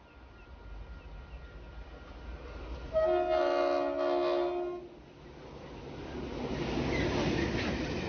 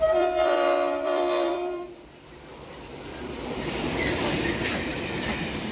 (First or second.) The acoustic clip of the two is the first